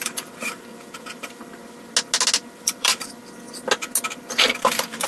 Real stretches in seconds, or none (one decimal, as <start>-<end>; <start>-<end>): 1.6-2.5; 3.2-4.2